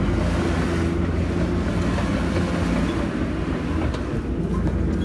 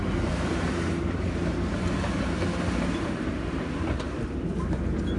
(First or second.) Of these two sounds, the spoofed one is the second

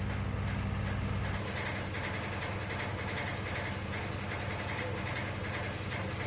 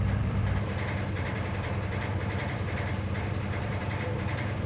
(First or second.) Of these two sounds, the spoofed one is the second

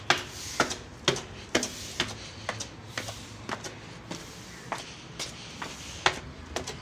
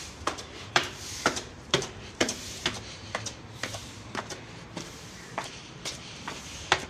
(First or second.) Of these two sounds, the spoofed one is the second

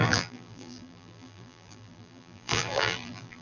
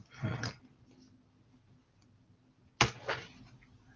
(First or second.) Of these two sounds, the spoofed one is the first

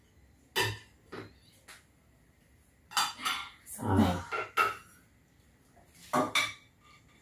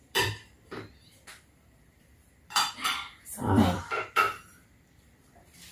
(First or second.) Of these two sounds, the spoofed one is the second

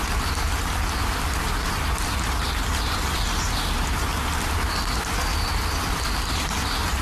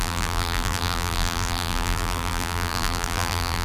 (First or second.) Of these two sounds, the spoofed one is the second